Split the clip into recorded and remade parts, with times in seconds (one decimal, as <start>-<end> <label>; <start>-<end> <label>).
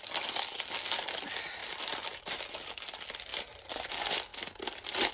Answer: 0.0-3.3 recorded; 3.3-3.9 remade; 3.9-5.1 recorded